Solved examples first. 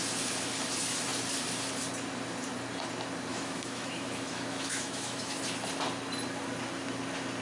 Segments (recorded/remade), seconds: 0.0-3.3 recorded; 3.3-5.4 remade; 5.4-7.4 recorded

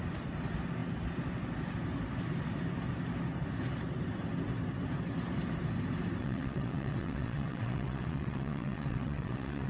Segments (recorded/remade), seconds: 0.0-6.2 recorded; 6.2-9.7 remade

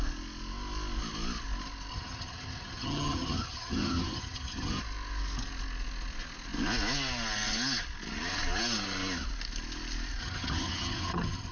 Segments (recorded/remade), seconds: 0.0-1.9 recorded; 1.9-4.8 remade; 4.8-10.2 recorded; 10.2-11.5 remade

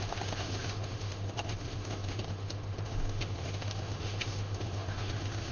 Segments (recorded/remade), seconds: 0.0-5.5 remade